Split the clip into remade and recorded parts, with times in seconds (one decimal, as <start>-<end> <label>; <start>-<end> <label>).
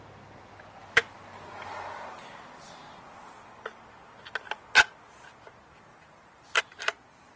0.0-5.9 recorded; 5.9-6.6 remade; 6.6-7.4 recorded